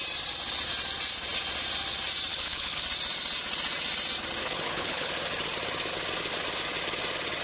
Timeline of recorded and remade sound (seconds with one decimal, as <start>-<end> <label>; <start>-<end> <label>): 0.0-2.3 recorded; 2.3-2.8 remade; 2.8-4.4 recorded; 4.4-5.1 remade; 5.1-7.4 recorded